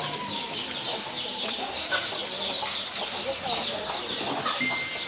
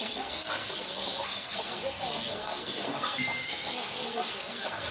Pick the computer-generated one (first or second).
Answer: second